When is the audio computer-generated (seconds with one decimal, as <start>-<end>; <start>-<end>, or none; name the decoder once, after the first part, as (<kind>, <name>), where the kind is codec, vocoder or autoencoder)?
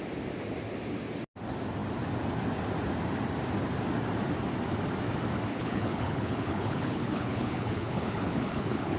5.5-9.0 (codec, HILCodec)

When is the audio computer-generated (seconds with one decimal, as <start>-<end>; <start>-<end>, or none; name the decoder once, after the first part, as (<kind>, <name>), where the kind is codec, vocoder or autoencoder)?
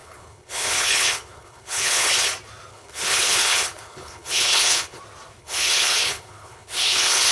0.0-2.3 (codec, HILCodec); 2.7-5.0; 5.4-7.3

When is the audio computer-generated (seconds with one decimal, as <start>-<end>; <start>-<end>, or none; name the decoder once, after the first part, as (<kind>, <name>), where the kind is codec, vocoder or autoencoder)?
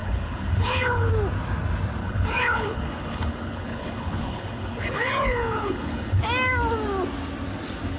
0.0-1.1 (codec, HILCodec); 2.0-6.2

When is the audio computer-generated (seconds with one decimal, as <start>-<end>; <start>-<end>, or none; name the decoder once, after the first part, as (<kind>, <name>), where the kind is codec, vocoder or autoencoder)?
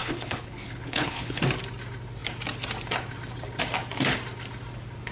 0.0-1.4 (codec, HILCodec)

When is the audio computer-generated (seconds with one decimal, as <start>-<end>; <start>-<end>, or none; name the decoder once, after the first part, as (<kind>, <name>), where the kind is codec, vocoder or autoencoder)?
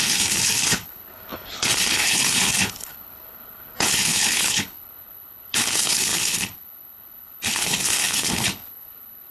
0.0-9.3 (codec, HILCodec)